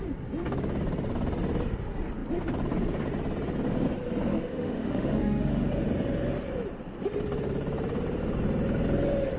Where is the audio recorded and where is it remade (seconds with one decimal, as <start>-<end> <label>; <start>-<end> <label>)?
0.0-4.3 recorded; 4.3-5.7 remade; 5.7-9.4 recorded